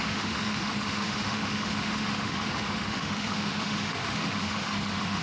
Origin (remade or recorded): remade